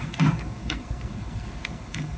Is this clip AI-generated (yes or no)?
yes